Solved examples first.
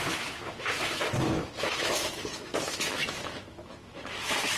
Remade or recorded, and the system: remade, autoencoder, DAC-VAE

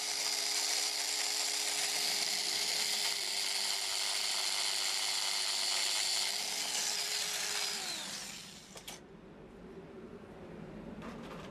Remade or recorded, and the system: remade, vocoder, BigVGAN v2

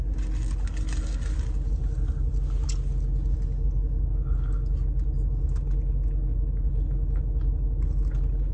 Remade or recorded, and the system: recorded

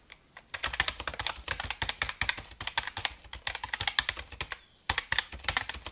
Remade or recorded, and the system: recorded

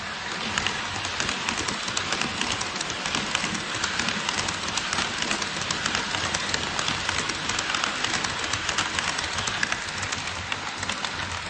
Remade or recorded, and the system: recorded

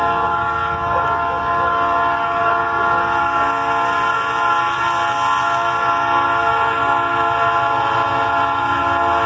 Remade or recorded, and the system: recorded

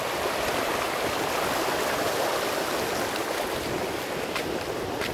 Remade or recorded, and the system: recorded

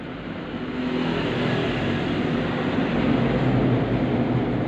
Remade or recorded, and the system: recorded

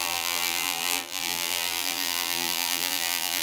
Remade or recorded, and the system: remade, vocoder, BigVGAN v2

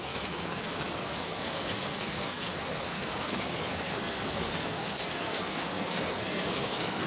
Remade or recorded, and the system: remade, codec, SNAC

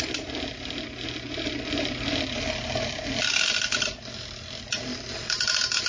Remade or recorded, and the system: recorded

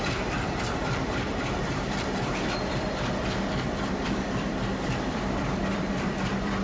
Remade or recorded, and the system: remade, vocoder, BigVGAN v2